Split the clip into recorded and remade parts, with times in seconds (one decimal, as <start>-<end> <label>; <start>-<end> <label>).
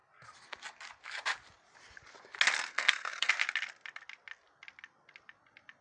0.0-2.7 recorded; 2.7-3.3 remade; 3.3-5.8 recorded